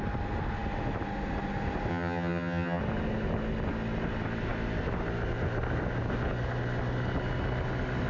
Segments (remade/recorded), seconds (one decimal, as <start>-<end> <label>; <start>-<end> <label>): 0.0-1.9 recorded; 1.9-2.8 remade; 2.8-8.1 recorded